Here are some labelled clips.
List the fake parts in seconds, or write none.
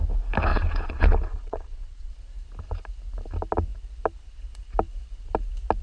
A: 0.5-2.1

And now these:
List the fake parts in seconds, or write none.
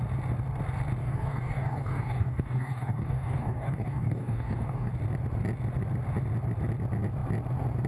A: 1.0-4.9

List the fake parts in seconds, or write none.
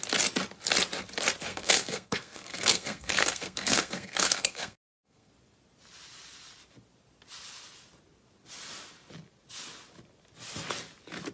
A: 1.5-5.3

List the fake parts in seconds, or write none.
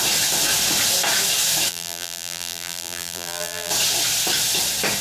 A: 1.7-3.7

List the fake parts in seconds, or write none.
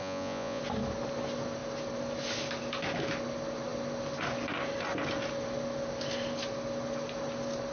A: 0.0-0.6